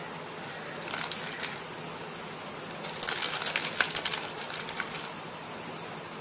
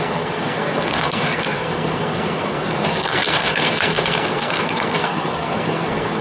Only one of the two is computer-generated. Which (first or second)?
second